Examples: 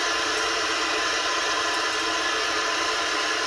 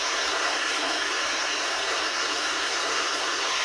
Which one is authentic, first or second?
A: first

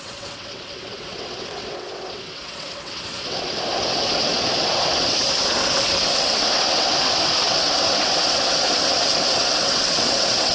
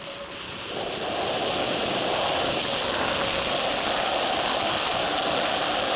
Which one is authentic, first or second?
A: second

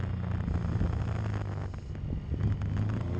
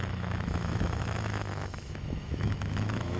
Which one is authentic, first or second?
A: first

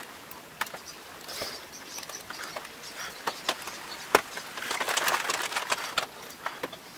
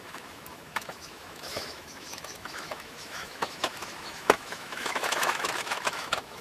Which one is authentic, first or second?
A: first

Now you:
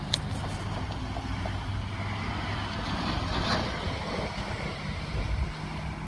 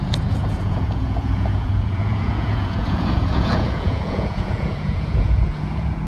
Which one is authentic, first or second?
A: first